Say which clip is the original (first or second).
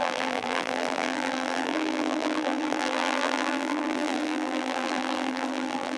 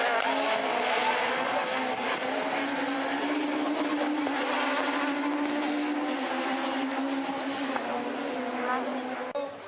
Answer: second